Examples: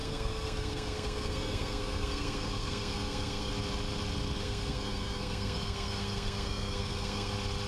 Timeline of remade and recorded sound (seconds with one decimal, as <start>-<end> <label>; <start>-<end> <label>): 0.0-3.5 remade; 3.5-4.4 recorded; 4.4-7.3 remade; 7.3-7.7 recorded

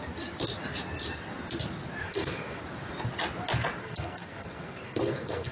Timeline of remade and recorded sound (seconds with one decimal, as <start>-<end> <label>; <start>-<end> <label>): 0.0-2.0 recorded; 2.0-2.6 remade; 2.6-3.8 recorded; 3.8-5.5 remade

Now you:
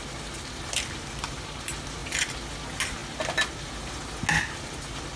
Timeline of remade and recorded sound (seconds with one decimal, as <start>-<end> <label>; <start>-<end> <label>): 0.0-5.2 recorded